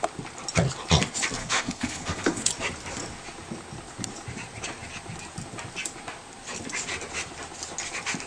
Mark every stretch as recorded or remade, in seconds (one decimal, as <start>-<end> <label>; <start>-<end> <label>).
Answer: 0.0-1.4 recorded; 1.4-2.5 remade; 2.5-8.3 recorded